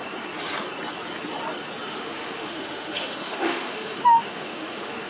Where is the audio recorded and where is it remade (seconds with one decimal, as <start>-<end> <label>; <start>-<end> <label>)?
0.0-1.9 recorded; 1.9-5.1 remade

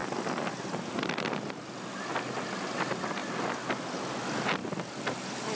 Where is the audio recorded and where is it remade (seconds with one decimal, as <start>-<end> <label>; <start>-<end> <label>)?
0.0-5.6 recorded

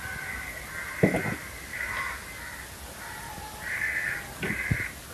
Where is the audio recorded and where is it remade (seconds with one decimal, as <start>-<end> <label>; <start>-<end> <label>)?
0.0-5.1 recorded